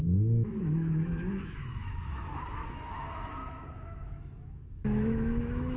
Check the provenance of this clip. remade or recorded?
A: remade